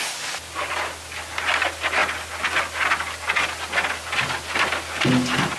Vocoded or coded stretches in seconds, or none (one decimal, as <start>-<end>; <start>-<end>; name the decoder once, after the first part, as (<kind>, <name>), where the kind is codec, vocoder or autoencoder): none